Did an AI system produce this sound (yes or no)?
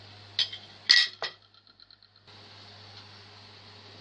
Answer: no